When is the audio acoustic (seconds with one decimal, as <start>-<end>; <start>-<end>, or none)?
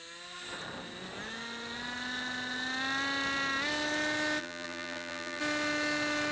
0.0-4.4; 5.4-6.3